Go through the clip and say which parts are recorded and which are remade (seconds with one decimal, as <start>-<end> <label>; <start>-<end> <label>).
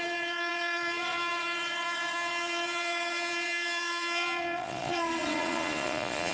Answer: 0.0-6.3 remade